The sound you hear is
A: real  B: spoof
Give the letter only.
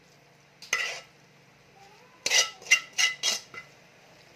A